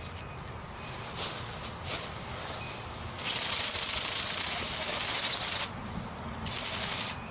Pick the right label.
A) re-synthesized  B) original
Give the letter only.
B